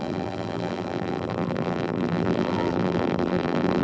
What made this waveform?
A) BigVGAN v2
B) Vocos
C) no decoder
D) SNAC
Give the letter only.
A